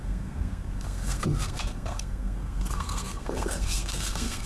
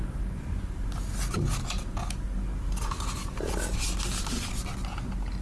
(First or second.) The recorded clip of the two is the second